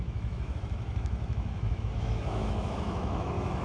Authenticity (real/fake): fake